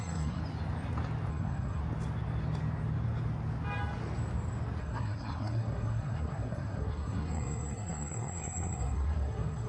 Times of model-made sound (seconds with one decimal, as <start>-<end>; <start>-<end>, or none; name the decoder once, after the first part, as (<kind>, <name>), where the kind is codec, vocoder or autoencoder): 0.0-0.4 (codec, SNAC); 1.3-1.8; 4.8-9.7